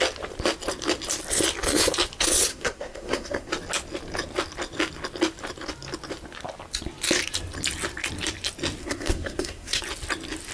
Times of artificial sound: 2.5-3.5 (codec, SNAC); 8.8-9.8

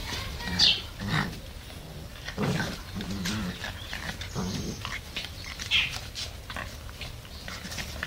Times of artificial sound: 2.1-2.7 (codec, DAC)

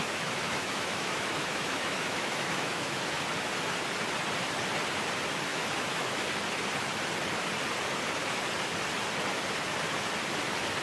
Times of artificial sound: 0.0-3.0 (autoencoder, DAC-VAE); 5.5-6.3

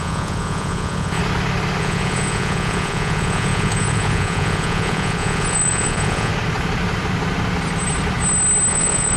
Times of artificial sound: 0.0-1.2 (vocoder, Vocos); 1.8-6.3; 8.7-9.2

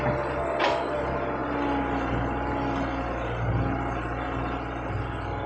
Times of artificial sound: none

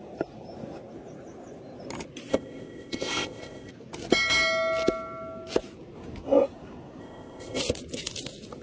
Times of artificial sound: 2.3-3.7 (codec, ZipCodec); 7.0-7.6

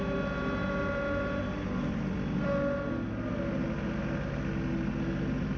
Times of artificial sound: none

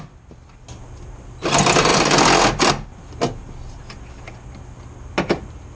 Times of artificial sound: none